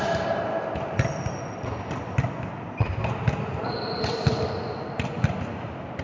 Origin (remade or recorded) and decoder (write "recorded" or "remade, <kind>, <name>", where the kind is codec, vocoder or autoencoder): recorded